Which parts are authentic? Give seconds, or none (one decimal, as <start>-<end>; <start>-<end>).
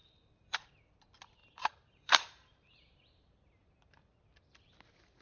0.7-1.4; 3.7-5.2